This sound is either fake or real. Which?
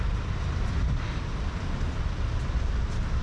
fake